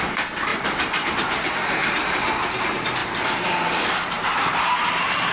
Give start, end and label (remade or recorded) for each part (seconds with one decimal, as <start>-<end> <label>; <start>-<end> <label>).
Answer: 0.0-0.5 recorded; 0.5-2.3 remade; 2.3-3.0 recorded; 3.0-5.3 remade